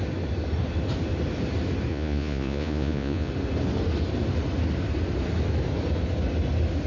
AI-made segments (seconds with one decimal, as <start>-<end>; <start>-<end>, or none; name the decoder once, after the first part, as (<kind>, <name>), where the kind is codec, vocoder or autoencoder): 1.9-3.3 (vocoder, Vocos)